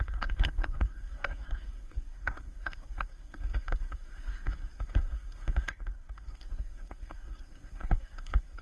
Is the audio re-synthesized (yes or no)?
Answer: yes